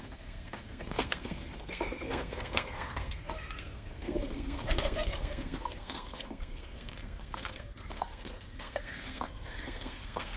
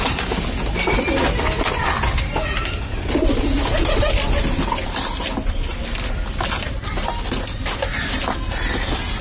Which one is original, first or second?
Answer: second